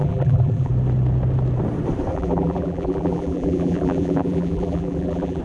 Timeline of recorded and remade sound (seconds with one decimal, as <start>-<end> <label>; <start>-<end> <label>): 0.0-0.7 remade; 0.7-2.1 recorded; 2.1-5.4 remade